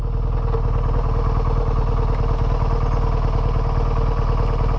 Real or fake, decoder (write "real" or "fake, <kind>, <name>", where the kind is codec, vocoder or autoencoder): real